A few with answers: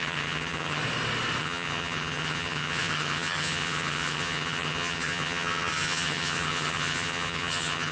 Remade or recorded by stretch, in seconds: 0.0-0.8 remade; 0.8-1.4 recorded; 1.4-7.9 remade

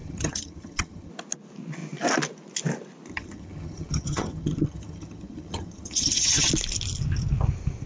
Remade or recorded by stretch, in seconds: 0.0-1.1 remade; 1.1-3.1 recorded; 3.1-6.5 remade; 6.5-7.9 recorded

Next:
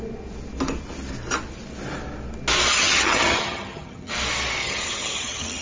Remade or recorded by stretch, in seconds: 0.0-2.7 recorded; 2.7-4.1 remade; 4.1-4.6 recorded; 4.6-5.6 remade